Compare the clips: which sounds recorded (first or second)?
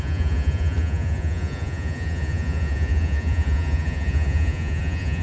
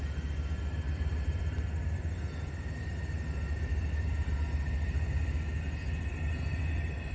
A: second